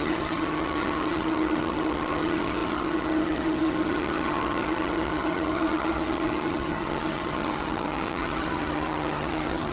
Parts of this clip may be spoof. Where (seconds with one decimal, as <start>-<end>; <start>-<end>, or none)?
0.0-9.7